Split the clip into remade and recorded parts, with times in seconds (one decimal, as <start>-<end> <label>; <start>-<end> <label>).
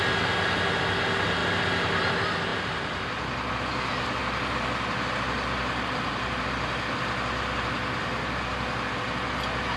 0.0-2.5 recorded; 2.5-3.1 remade; 3.1-9.8 recorded